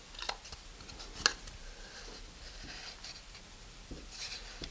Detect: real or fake real